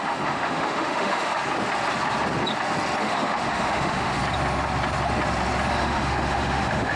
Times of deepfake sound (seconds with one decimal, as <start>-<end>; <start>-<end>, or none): 0.0-1.4; 3.0-4.2; 5.7-7.0